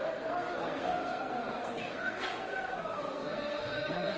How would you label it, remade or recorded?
remade